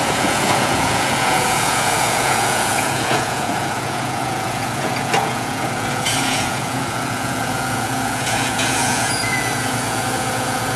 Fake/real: fake